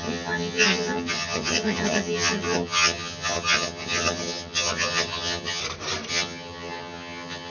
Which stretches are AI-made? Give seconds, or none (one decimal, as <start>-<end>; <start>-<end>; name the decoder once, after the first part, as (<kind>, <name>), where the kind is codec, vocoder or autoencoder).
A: 0.0-5.6 (vocoder, HiFi-GAN); 6.1-7.5